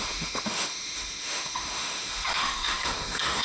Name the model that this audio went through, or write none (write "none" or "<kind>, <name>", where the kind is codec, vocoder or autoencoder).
autoencoder, DAC-VAE